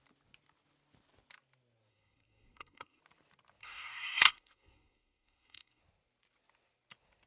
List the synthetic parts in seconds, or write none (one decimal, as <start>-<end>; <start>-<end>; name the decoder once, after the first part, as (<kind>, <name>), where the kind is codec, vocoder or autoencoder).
1.9-3.0 (codec, SNAC); 3.6-5.8